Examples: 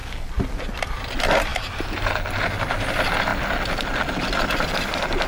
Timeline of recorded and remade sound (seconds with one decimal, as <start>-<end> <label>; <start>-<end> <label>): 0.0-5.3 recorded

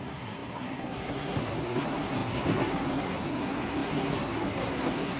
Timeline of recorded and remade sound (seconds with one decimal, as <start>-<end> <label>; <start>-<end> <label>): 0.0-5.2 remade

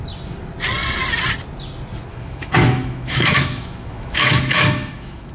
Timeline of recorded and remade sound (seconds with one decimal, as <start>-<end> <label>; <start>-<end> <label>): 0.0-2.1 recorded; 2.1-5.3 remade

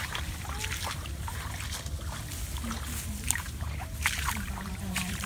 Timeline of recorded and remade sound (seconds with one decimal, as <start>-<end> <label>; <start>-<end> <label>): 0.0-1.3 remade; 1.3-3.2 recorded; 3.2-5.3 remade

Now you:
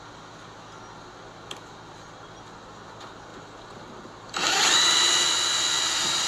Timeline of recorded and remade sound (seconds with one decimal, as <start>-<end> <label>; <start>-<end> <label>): 0.0-6.3 recorded